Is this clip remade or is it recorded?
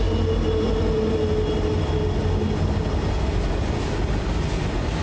recorded